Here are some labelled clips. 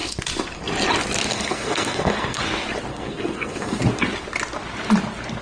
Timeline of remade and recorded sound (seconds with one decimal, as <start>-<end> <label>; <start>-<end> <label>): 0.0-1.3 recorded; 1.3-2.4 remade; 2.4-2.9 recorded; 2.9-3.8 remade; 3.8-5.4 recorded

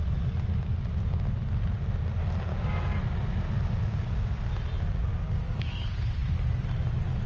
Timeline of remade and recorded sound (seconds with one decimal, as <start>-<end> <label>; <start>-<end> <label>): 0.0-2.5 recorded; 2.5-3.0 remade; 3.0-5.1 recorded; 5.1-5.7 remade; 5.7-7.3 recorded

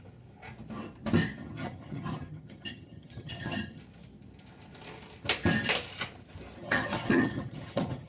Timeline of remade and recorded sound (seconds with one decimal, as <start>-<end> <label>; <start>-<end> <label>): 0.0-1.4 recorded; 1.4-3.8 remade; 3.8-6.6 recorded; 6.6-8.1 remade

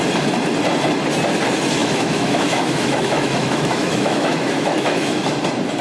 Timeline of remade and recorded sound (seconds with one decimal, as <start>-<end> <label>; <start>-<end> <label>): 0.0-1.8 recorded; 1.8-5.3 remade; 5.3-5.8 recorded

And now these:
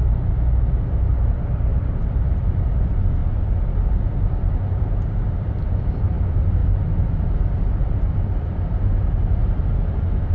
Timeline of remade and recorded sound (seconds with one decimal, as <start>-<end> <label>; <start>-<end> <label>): 0.0-1.7 recorded; 1.7-2.8 remade; 2.8-10.3 recorded

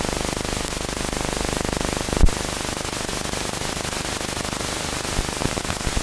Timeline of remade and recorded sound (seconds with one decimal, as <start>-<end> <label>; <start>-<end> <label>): 0.0-6.0 recorded

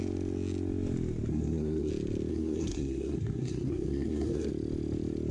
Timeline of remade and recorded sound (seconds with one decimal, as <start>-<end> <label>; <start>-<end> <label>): 0.0-1.3 recorded; 1.3-1.9 remade; 1.9-2.3 recorded; 2.3-4.5 remade; 4.5-5.3 recorded

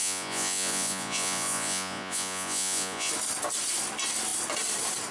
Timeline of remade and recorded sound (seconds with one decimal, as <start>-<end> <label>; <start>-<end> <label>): 0.0-3.1 remade; 3.1-5.1 recorded